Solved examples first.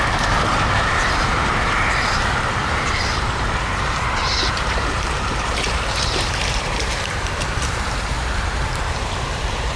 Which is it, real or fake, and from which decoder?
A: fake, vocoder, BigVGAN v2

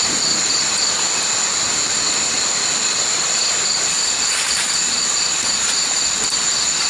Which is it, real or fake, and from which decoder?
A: real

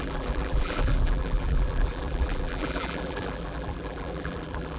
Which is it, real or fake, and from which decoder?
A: fake, vocoder, BigVGAN v2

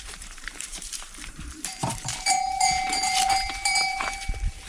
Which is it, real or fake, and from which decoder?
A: fake, vocoder, BigVGAN v2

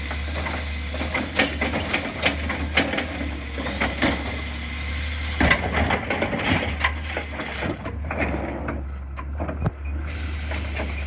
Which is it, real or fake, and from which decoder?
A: real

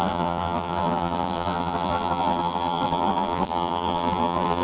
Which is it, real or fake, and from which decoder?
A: fake, vocoder, BigVGAN v2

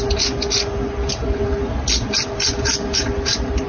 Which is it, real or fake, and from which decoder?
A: real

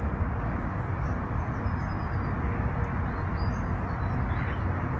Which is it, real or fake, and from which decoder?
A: real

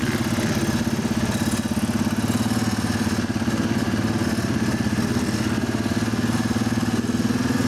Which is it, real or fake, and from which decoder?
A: real